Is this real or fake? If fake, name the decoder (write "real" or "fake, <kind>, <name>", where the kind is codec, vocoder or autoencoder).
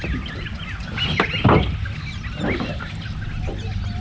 real